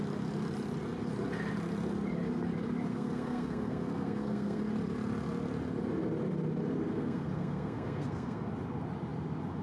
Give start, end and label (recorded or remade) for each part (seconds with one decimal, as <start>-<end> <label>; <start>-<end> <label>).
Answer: 0.0-2.9 recorded; 2.9-4.6 remade; 4.6-6.9 recorded; 6.9-8.5 remade; 8.5-9.6 recorded